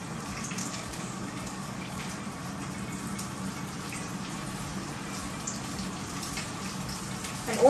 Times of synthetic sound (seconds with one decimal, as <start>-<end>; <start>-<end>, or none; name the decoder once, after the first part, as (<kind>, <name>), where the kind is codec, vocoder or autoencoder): 0.6-2.0 (codec, DAC)